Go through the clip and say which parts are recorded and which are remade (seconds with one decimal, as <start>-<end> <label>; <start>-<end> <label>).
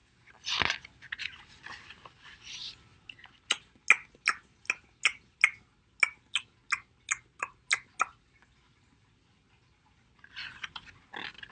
0.0-11.5 recorded